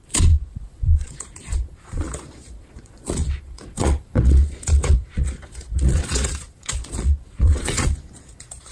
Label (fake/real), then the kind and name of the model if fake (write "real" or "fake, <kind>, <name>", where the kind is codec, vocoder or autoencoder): fake, vocoder, Vocos